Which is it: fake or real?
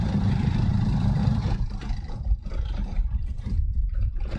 fake